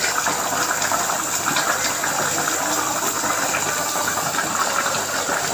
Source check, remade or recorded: recorded